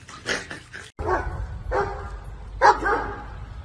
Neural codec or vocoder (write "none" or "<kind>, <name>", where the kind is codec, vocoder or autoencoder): none